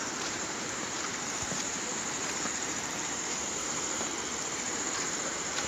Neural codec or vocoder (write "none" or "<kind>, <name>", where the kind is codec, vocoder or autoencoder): vocoder, BigVGAN v2